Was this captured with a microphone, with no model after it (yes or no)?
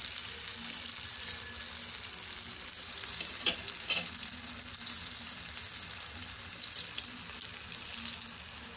yes